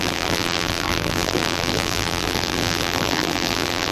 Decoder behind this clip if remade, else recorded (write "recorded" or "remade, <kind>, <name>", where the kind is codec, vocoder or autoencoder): remade, vocoder, BigVGAN v2